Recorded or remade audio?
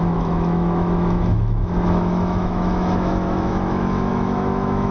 remade